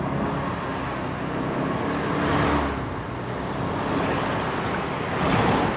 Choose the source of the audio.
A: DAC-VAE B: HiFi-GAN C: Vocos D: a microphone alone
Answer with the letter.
D